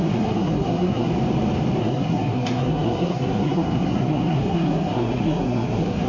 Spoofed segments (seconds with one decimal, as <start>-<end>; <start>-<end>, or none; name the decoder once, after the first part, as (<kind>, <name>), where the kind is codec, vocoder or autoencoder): 0.0-1.1 (codec, SNAC); 1.8-6.1